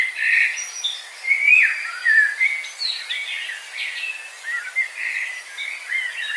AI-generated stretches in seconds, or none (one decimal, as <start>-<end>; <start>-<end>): none